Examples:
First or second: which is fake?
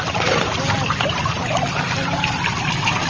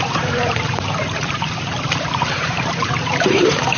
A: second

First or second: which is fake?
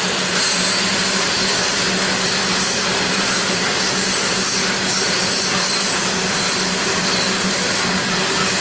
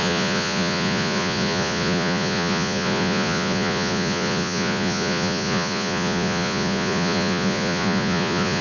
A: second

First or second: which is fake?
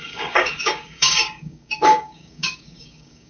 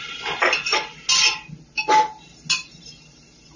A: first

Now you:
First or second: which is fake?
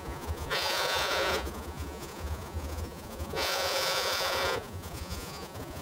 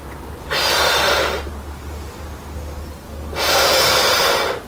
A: first